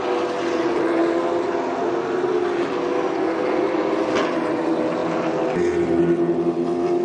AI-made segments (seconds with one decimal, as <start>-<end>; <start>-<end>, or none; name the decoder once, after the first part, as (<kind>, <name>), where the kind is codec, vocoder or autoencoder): none